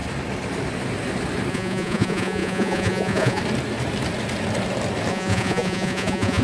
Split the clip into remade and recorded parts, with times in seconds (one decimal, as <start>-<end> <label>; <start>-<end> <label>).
0.0-1.5 recorded; 1.5-3.4 remade; 3.4-5.1 recorded; 5.1-6.4 remade